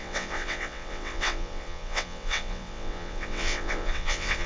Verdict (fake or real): fake